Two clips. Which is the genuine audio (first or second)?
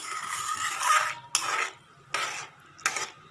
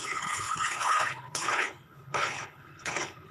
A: first